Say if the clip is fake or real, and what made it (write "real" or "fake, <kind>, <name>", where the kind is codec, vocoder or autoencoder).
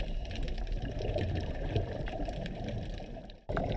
fake, vocoder, BigVGAN v2